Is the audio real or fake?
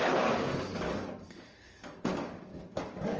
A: fake